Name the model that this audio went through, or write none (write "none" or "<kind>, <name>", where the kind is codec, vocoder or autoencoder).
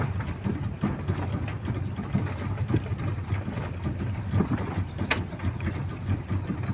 none